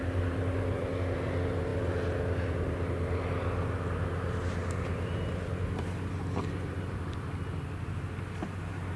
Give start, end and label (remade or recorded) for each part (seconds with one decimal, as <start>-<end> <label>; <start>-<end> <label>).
0.0-9.0 recorded